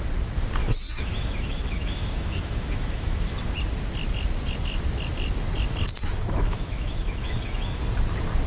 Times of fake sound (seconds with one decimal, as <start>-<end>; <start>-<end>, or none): 0.6-3.5; 6.0-7.8

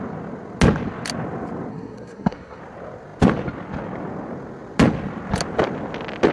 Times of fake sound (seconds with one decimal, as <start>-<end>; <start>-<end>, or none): 1.7-2.6

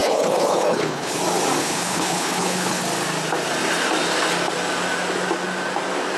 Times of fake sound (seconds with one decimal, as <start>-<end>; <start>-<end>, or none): 0.0-1.2; 1.6-2.8

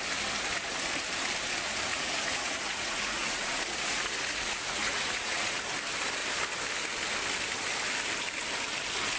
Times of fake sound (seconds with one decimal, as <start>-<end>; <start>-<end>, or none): 1.9-5.6

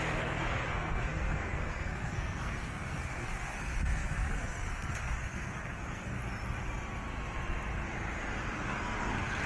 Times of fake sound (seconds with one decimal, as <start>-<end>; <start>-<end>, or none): 0.0-6.2; 9.0-9.5

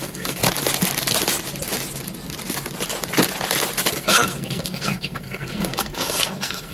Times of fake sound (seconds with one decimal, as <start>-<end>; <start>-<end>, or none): 0.0-0.4; 3.9-6.7

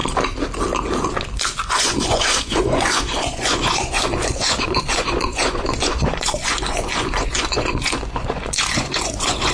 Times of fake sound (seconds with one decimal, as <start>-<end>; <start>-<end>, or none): 1.7-9.5

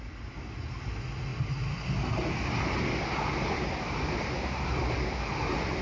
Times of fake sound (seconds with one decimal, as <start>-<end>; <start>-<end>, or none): none